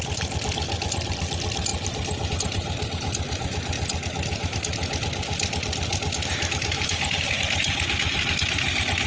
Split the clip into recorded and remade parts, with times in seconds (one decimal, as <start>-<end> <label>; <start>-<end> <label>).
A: 0.0-9.1 recorded